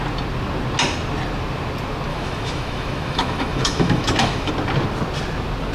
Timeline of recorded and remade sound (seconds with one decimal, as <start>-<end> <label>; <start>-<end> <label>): 0.0-2.1 recorded; 2.1-4.5 remade; 4.5-5.7 recorded